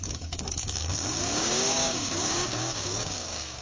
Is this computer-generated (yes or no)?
yes